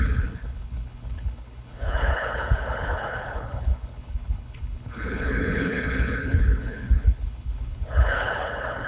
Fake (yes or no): yes